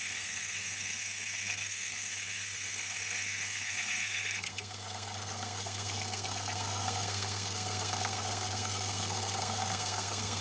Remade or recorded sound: remade